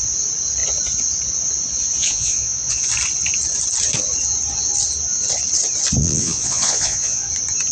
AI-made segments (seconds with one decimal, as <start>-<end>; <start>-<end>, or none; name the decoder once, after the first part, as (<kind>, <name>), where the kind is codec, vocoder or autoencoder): 2.0-2.9 (vocoder, Vocos); 6.0-7.3